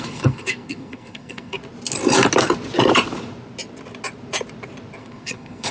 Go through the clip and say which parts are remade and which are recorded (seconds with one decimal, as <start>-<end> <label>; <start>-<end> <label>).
0.0-1.6 remade; 1.6-5.0 recorded; 5.0-5.7 remade